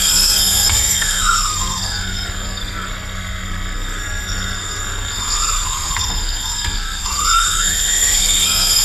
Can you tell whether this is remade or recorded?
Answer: remade